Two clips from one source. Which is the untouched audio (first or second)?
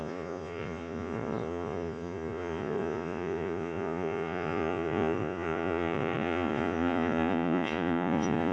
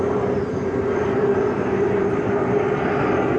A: second